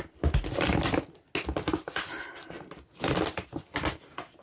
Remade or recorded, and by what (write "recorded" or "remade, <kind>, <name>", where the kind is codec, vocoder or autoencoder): recorded